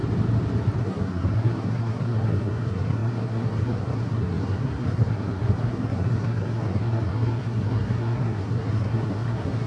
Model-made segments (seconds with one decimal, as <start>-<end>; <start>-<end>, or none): 0.8-9.7